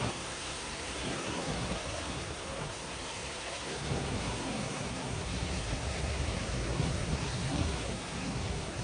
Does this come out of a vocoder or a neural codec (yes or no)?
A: yes